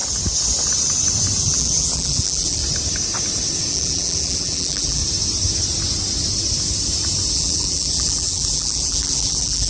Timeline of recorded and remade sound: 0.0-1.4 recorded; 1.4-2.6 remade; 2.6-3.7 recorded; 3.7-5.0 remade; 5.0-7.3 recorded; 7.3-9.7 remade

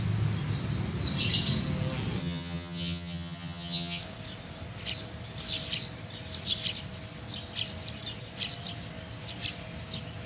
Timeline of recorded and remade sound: 0.0-2.2 recorded; 2.2-4.0 remade; 4.0-10.3 recorded

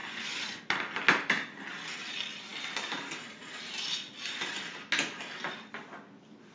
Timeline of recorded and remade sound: 0.0-0.6 remade; 0.6-6.5 recorded

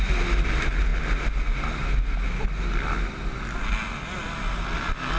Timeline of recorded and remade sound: 0.0-5.2 recorded

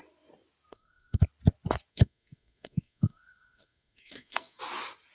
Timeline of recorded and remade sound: 0.0-0.7 recorded; 0.7-1.2 remade; 1.2-1.9 recorded; 1.9-4.6 remade; 4.6-5.1 recorded

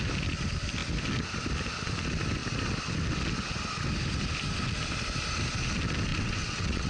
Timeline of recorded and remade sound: 0.0-6.1 recorded; 6.1-6.9 remade

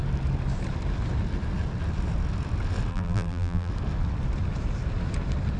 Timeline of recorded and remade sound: 0.0-2.9 recorded; 2.9-3.7 remade; 3.7-5.6 recorded

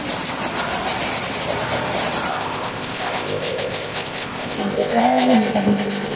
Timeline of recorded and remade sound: 0.0-2.3 recorded; 2.3-6.2 remade